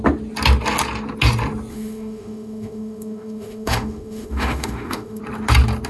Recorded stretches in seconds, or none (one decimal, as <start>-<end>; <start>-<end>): 0.0-1.7; 5.2-5.9